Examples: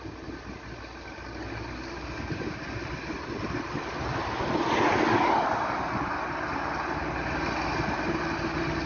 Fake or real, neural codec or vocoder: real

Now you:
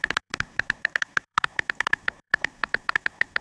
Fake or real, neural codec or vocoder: fake, codec, SNAC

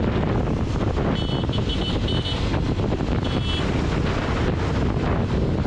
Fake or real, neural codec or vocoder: real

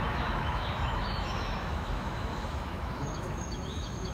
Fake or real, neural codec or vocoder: fake, autoencoder, DAC-VAE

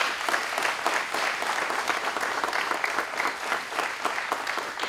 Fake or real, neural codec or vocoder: real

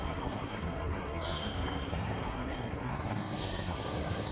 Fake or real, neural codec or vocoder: fake, codec, SNAC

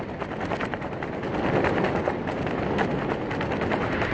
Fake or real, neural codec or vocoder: real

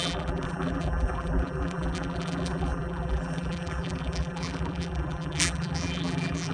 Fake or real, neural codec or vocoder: fake, vocoder, BigVGAN v2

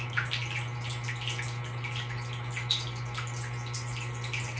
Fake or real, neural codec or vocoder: real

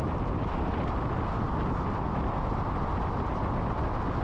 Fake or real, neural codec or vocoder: real